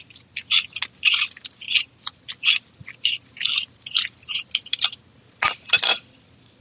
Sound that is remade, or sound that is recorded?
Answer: recorded